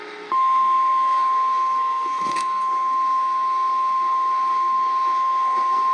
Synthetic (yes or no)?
yes